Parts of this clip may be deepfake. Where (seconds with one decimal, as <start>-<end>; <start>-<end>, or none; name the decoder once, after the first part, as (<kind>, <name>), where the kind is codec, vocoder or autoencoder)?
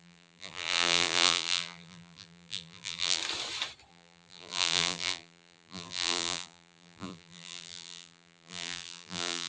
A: 0.0-3.2 (vocoder, BigVGAN v2); 3.9-9.5